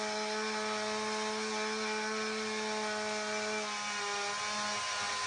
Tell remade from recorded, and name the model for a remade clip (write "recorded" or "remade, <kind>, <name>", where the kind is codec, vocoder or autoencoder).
recorded